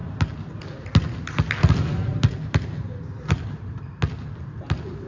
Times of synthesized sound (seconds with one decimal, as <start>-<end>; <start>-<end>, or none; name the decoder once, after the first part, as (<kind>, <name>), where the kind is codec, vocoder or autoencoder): none

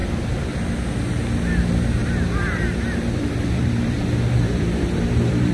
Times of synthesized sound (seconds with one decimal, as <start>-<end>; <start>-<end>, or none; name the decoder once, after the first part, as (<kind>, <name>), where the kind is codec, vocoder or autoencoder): 2.0-5.5 (vocoder, BigVGAN v2)

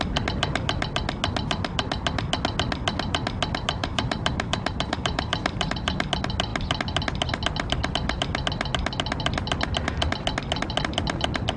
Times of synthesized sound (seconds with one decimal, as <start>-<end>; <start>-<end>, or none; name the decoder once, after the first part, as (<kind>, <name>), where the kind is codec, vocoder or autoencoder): 3.8-6.1 (vocoder, BigVGAN v2)

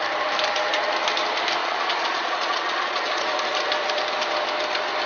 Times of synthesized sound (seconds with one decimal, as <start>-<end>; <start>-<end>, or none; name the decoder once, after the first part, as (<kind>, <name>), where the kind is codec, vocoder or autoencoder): 1.6-3.3 (vocoder, Vocos)

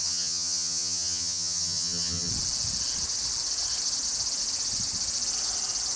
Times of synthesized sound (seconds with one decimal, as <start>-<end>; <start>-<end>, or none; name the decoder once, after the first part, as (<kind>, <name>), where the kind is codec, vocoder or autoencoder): 0.0-2.3 (vocoder, HiFi-GAN)

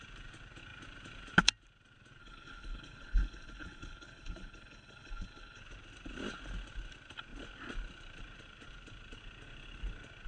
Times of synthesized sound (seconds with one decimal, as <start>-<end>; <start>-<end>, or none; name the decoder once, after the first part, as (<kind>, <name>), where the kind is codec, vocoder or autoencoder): 2.2-5.6 (codec, HILCodec)

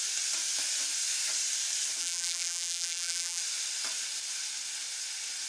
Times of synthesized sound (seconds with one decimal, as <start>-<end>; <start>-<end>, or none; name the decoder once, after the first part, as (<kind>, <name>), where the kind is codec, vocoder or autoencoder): 2.0-3.4 (vocoder, BigVGAN v2)